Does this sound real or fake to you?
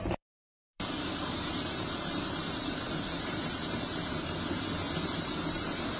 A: fake